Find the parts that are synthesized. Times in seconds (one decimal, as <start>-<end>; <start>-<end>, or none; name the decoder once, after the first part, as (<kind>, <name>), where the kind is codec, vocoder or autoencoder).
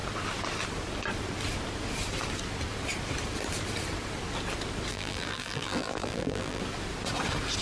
4.9-6.6 (vocoder, BigVGAN v2)